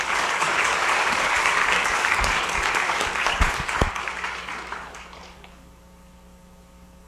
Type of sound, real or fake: fake